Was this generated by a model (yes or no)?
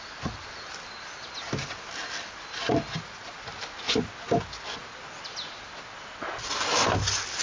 no